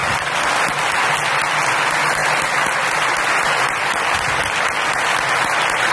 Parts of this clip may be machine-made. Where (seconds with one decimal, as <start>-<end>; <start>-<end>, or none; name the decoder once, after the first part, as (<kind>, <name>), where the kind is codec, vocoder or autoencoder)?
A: none